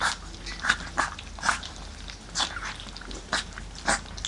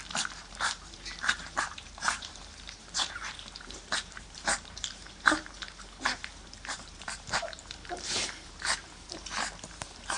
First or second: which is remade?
second